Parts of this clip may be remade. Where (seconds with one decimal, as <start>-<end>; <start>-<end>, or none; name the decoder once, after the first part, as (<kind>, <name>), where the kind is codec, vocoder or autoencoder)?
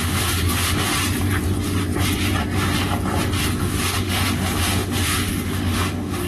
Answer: 0.0-0.9 (autoencoder, DAC-VAE); 3.6-6.3